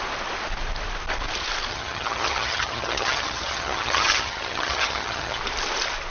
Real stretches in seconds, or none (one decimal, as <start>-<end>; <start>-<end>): 0.0-1.7; 5.4-6.1